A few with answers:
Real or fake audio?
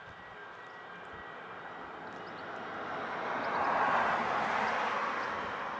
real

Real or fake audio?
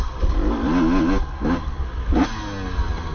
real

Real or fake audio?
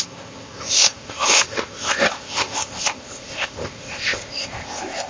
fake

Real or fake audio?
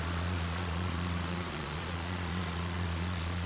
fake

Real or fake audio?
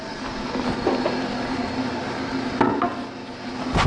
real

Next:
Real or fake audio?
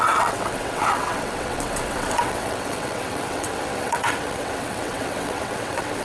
fake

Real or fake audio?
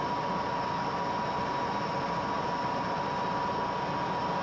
real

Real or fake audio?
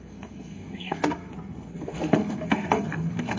fake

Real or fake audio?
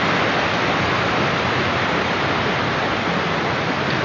real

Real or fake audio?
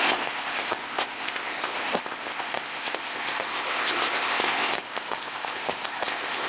fake